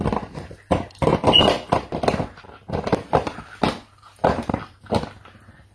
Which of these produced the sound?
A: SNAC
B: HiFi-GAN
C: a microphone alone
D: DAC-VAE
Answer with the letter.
C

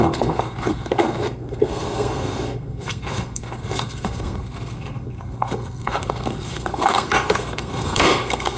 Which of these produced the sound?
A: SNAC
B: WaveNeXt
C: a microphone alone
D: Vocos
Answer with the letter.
A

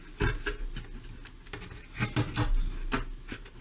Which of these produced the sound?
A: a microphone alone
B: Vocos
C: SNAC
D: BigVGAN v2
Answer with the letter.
A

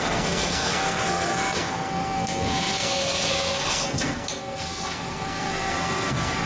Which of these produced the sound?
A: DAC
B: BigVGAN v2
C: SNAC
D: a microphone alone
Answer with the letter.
C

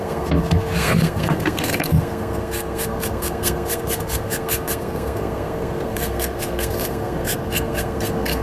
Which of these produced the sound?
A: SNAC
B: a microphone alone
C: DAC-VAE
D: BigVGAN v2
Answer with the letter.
A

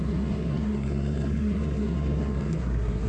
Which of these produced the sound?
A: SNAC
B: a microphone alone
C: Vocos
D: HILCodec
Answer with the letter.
A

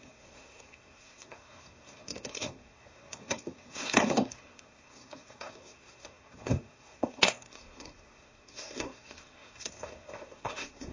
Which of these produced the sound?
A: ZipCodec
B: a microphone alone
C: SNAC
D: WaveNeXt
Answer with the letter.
C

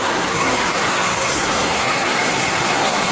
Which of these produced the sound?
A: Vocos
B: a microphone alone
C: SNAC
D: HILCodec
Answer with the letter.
C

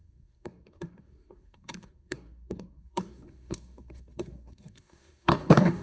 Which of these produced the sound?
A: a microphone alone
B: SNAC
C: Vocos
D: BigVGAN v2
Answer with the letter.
B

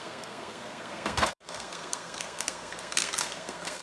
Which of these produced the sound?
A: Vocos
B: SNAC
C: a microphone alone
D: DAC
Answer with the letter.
B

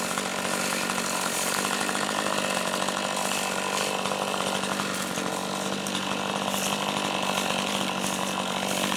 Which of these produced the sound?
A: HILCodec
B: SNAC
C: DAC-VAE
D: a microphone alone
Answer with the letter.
D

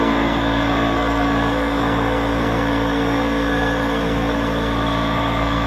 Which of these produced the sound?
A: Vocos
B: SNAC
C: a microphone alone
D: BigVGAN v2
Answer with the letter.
B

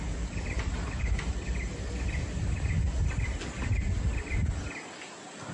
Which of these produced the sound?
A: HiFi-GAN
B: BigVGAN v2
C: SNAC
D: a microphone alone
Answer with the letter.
D